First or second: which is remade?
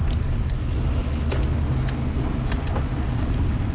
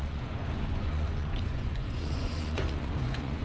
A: second